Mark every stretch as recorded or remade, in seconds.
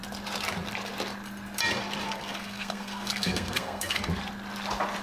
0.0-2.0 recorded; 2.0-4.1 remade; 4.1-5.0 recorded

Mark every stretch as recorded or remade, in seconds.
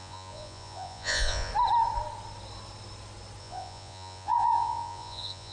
0.0-1.5 remade; 1.5-3.4 recorded; 3.4-5.5 remade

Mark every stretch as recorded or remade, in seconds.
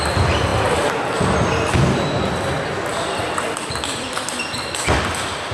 0.0-5.5 recorded